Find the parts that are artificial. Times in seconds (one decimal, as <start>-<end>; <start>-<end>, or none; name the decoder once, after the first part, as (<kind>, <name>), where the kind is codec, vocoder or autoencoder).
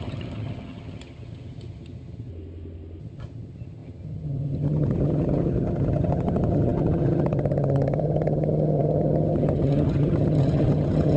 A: 0.0-2.3 (vocoder, HiFi-GAN); 3.0-11.2